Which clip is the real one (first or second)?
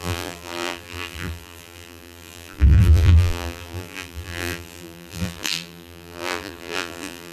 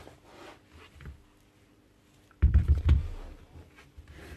second